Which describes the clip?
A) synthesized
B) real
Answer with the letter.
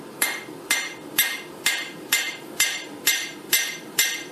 A